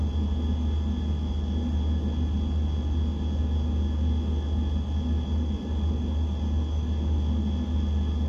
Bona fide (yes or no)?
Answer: yes